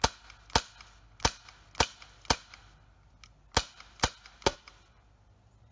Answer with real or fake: real